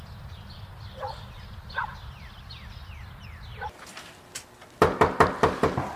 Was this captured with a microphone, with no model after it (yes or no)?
yes